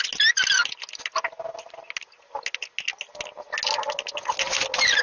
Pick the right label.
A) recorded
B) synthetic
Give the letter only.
A